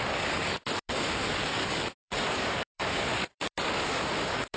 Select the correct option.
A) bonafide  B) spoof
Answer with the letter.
B